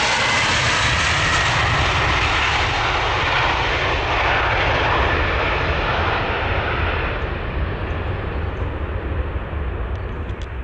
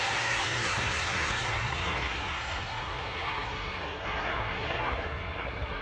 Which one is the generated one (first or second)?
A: second